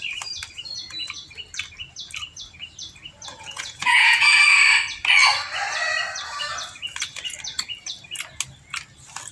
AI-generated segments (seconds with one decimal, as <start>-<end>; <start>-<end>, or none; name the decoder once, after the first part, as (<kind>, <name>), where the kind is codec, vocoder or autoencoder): 3.3-4.6 (vocoder, Vocos)